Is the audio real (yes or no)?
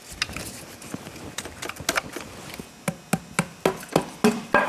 yes